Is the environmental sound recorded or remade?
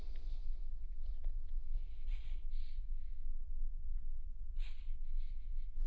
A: remade